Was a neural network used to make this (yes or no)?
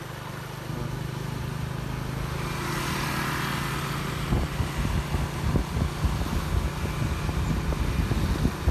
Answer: no